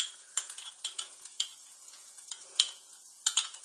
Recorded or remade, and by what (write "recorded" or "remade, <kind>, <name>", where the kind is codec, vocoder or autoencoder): remade, vocoder, Vocos